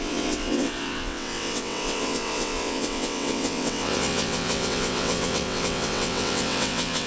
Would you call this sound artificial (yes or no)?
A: yes